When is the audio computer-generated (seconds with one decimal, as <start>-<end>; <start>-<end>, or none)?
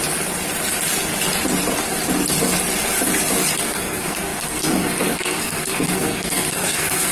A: 3.6-7.1